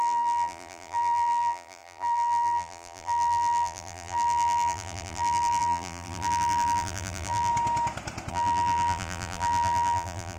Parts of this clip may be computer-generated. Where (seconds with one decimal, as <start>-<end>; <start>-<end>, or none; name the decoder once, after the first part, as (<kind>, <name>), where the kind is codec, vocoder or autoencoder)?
0.0-7.5 (vocoder, BigVGAN v2); 8.3-10.4